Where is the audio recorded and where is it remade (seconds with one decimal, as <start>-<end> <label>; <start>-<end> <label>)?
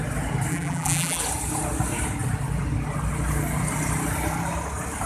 0.0-0.5 recorded; 0.5-1.2 remade; 1.2-5.1 recorded